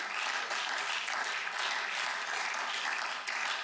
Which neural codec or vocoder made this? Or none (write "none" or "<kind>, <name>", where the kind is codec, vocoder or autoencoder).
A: none